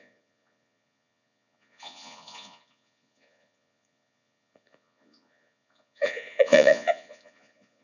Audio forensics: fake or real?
fake